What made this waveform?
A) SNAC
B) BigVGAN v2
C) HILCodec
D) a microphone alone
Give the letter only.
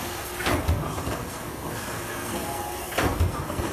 A